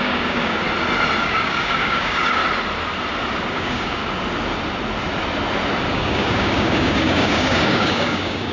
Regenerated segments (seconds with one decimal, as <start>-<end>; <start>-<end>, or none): 0.0-0.6; 1.2-2.4; 3.5-4.0; 5.9-8.5